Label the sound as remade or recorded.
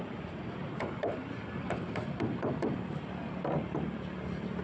recorded